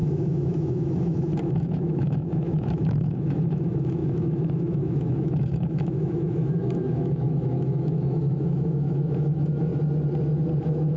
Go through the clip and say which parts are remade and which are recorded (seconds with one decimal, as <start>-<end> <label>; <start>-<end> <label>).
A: 0.0-9.7 remade; 9.7-10.6 recorded; 10.6-11.0 remade

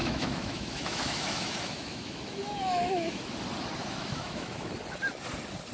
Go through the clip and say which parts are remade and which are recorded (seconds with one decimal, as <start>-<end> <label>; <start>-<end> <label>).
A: 0.0-3.4 remade; 3.4-3.8 recorded; 3.8-4.7 remade; 4.7-5.7 recorded

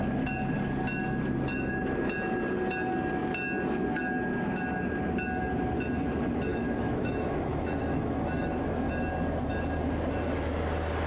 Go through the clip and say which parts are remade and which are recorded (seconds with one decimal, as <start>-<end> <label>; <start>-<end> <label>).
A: 0.0-6.5 recorded; 6.5-8.9 remade; 8.9-11.1 recorded

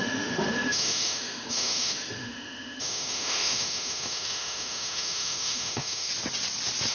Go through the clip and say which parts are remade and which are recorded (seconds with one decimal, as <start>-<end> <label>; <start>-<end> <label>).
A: 0.0-6.1 remade; 6.1-6.9 recorded

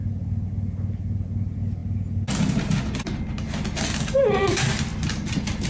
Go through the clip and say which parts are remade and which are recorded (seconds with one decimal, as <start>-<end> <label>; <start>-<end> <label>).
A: 0.0-5.7 recorded

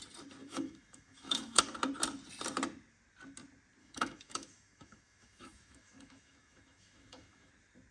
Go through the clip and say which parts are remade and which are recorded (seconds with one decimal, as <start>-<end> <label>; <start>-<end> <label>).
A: 0.0-0.4 recorded; 0.4-1.6 remade; 1.6-3.8 recorded; 3.8-7.5 remade; 7.5-7.9 recorded

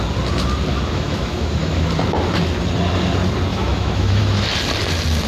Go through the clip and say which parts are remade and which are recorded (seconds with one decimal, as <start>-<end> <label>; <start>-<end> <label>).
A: 0.0-0.7 recorded; 0.7-1.9 remade; 1.9-3.5 recorded; 3.5-4.2 remade; 4.2-5.3 recorded

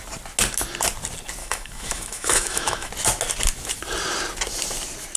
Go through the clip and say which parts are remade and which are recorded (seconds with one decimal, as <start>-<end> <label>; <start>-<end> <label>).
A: 0.0-1.4 recorded; 1.4-2.9 remade; 2.9-5.2 recorded